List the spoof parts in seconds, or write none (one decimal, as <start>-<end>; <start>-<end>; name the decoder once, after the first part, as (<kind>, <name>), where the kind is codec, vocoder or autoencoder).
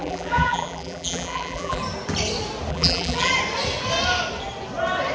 0.0-1.8 (vocoder, BigVGAN v2); 2.7-3.3